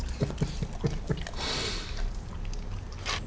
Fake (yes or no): no